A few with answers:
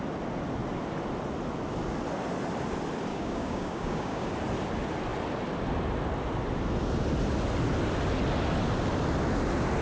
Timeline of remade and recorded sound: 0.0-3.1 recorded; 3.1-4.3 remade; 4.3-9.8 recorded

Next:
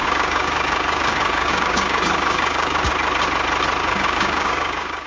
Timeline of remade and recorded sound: 0.0-2.9 remade; 2.9-3.8 recorded; 3.8-5.1 remade

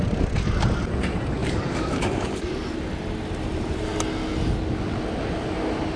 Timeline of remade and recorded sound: 0.0-1.4 recorded; 1.4-2.5 remade; 2.5-6.0 recorded

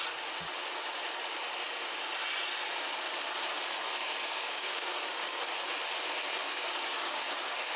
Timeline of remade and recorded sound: 0.0-4.0 recorded; 4.0-5.4 remade; 5.4-6.4 recorded; 6.4-7.8 remade

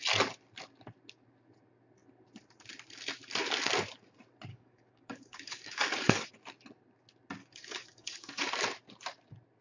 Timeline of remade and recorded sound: 0.0-4.5 recorded; 4.5-6.3 remade; 6.3-7.4 recorded; 7.4-8.4 remade; 8.4-9.6 recorded

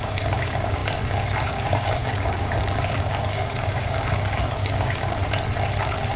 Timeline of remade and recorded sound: 0.0-5.2 remade; 5.2-5.8 recorded; 5.8-6.2 remade

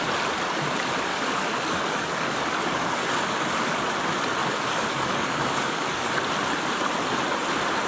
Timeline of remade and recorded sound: 0.0-1.1 recorded; 1.1-3.8 remade; 3.8-4.4 recorded; 4.4-6.1 remade; 6.1-7.9 recorded

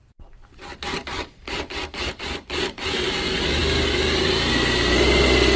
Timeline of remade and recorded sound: 0.0-5.6 recorded